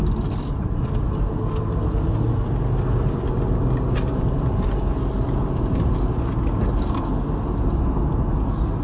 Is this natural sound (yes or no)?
yes